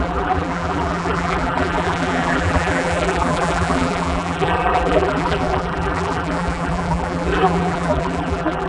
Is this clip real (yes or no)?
no